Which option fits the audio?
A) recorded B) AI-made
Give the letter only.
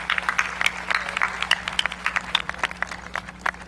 A